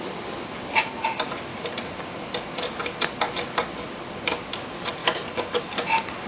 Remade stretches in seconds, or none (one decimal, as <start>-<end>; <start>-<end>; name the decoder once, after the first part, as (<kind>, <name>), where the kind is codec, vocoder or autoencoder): none